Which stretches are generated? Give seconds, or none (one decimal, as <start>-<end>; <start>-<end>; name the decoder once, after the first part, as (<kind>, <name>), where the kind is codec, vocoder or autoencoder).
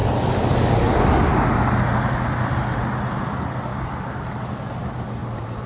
0.0-1.0 (vocoder, BigVGAN v2); 3.7-4.3; 5.2-5.7